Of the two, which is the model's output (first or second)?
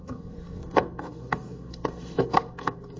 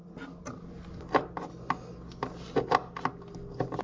first